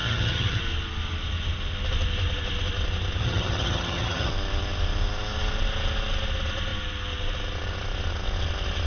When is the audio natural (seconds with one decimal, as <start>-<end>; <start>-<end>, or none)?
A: 0.6-3.2; 4.3-8.9